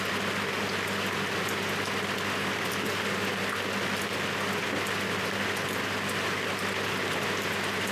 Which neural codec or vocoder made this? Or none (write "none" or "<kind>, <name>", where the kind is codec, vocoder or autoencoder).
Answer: none